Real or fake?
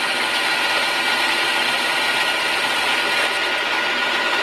real